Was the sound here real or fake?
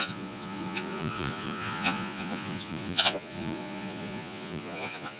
fake